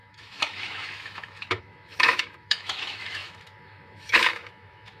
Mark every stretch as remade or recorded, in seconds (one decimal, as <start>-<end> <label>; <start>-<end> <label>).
0.0-5.0 remade